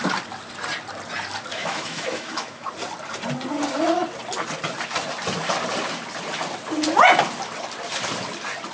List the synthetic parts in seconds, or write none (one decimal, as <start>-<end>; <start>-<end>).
1.5-2.7